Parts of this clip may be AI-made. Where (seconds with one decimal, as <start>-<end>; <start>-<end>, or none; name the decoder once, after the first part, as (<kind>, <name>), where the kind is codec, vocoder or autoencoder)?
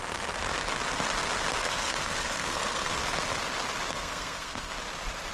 1.6-3.0 (codec, SNAC); 3.9-4.7